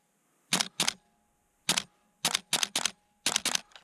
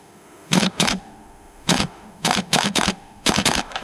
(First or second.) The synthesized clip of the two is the second